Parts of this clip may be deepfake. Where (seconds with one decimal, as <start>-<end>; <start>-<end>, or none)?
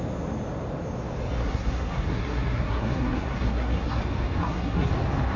1.4-4.0; 4.4-4.9